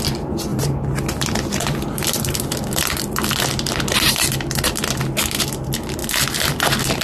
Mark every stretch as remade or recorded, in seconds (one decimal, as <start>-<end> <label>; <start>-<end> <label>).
0.0-0.5 recorded; 0.5-4.7 remade; 4.7-7.0 recorded